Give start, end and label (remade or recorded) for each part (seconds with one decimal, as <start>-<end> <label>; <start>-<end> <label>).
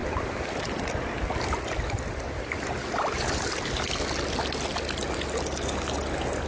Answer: 0.0-0.8 remade; 0.8-6.5 recorded